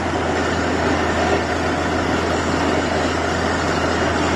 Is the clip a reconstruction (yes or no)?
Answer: no